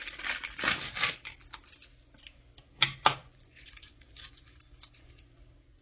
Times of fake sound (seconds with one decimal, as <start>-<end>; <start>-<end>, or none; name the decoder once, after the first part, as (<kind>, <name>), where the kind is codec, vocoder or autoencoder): 3.2-5.1 (vocoder, Vocos)